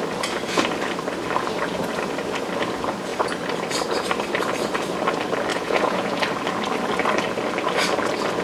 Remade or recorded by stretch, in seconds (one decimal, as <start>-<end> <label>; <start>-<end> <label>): 0.0-5.5 recorded; 5.5-6.2 remade; 6.2-8.4 recorded